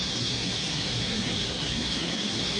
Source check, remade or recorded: remade